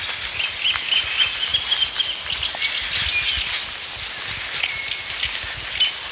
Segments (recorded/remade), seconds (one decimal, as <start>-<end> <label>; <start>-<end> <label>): 0.0-6.1 recorded